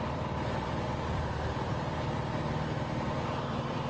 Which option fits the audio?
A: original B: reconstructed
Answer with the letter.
B